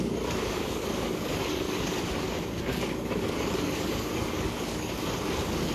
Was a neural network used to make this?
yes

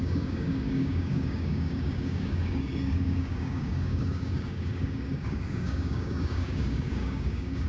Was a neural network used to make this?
yes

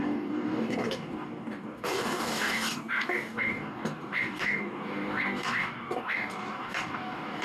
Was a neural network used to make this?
yes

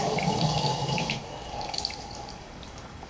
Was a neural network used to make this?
yes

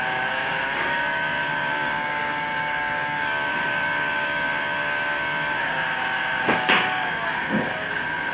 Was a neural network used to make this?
yes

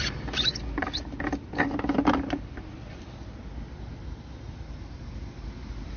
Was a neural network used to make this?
no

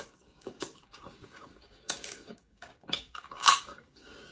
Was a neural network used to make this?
yes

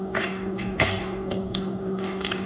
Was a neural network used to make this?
yes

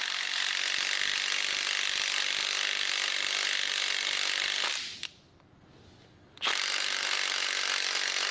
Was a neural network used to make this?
no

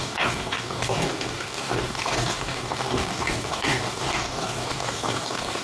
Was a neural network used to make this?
yes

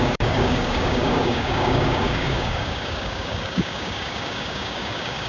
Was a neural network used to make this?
yes